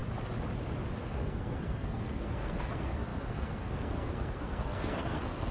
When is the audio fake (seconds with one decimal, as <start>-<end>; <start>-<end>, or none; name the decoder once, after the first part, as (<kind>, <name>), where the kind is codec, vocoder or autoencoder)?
1.0-5.5 (codec, SNAC)